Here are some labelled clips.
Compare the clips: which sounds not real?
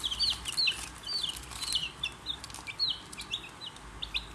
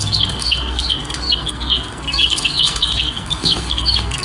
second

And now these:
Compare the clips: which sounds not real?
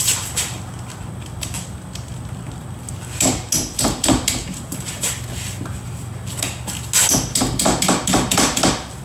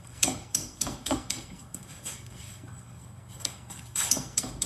second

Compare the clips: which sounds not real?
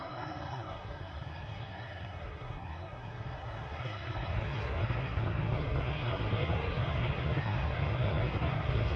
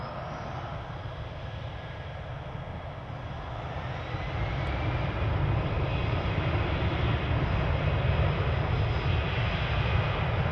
first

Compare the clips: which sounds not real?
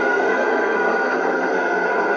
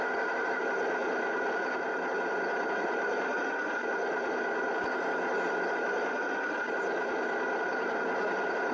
first